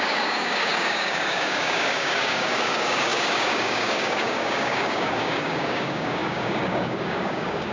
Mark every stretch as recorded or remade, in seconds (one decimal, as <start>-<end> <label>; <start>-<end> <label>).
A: 0.0-7.7 remade